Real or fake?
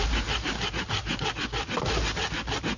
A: real